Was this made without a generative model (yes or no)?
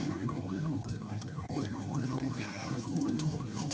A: no